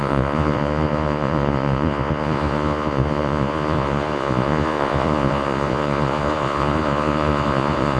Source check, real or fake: fake